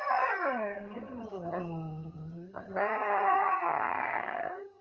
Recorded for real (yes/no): no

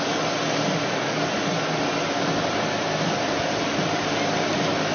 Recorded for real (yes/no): yes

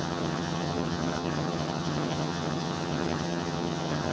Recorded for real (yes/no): no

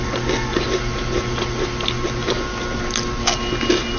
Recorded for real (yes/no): yes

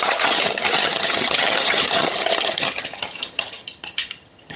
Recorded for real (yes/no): no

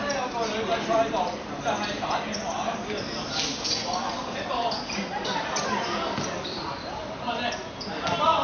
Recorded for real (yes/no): yes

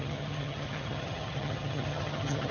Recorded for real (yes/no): no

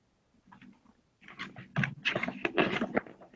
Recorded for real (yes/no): yes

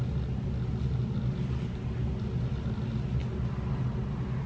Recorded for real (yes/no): yes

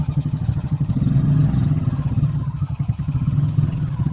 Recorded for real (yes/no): no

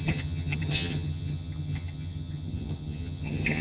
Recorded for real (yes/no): no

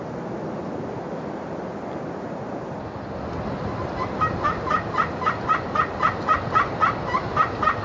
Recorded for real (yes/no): yes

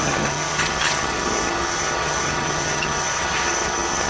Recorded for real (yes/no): no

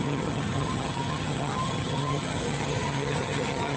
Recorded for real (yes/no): no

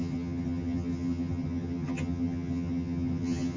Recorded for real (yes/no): no